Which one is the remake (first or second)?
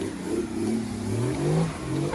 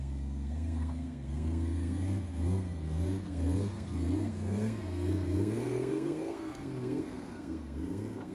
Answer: second